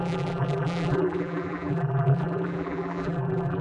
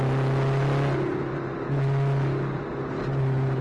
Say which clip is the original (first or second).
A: second